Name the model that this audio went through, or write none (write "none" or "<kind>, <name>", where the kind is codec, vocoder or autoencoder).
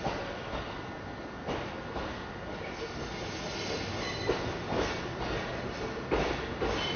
none